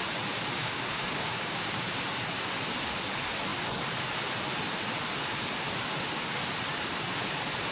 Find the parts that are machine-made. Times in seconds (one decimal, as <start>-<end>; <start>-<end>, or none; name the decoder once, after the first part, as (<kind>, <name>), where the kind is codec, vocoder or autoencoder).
0.6-2.0 (codec, DAC)